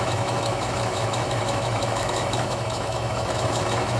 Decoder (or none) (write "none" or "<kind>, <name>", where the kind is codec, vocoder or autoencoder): autoencoder, DAC-VAE